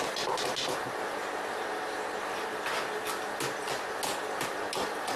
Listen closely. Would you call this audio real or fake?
real